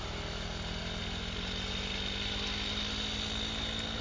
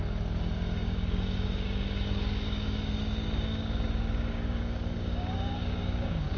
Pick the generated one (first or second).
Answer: second